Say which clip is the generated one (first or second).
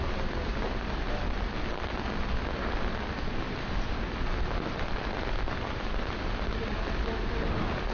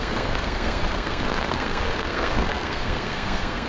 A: second